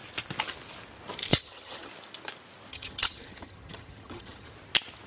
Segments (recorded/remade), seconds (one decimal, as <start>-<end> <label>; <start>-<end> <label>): 0.0-1.3 recorded; 1.3-1.9 remade; 1.9-2.7 recorded; 2.7-4.5 remade; 4.5-5.1 recorded